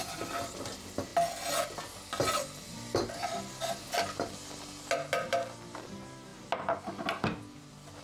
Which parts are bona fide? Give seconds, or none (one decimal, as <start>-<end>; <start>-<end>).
0.0-8.0